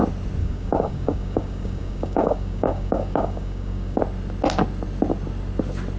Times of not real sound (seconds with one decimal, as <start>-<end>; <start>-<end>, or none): 0.4-4.0